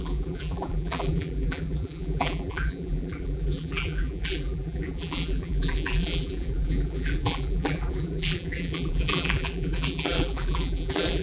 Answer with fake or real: fake